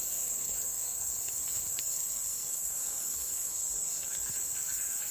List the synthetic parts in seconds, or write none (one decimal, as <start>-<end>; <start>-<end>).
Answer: 0.0-5.1